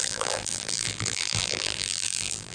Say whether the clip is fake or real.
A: fake